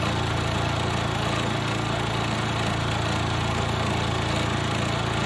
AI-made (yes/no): no